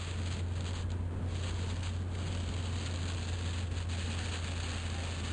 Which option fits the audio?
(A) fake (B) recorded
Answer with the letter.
B